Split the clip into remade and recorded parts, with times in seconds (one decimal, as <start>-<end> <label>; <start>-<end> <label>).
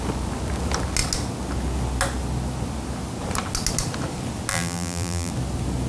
0.0-4.5 recorded; 4.5-5.3 remade; 5.3-5.9 recorded